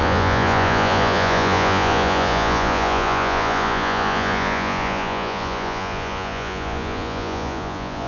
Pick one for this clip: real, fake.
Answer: fake